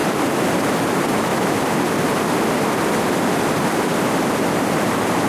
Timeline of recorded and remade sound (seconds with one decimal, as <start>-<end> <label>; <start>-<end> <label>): 0.0-0.5 recorded; 0.5-1.3 remade; 1.3-4.5 recorded; 4.5-5.3 remade